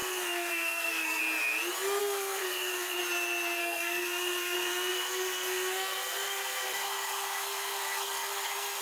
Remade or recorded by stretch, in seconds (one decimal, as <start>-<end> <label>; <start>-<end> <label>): 0.0-1.2 remade; 1.2-2.0 recorded; 2.0-3.0 remade; 3.0-3.6 recorded; 3.6-8.8 remade